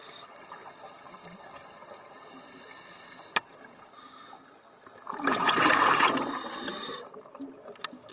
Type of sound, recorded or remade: recorded